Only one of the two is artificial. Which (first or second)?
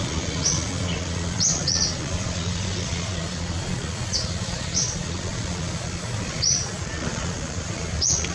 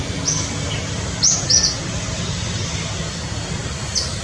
first